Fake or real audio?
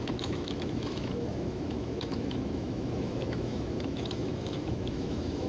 fake